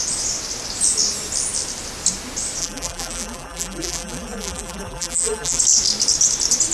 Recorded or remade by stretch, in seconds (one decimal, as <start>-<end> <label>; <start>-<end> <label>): 0.0-2.6 recorded; 2.6-5.6 remade; 5.6-6.7 recorded